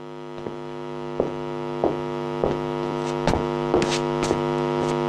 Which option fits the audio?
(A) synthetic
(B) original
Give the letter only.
B